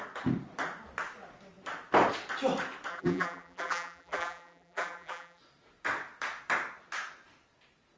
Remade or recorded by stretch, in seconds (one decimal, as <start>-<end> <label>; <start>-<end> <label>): 0.0-2.9 recorded; 2.9-5.4 remade; 5.4-8.0 recorded